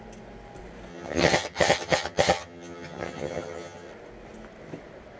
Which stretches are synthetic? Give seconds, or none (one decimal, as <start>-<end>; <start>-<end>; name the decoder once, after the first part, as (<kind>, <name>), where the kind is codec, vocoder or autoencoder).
0.9-3.9 (vocoder, HiFi-GAN)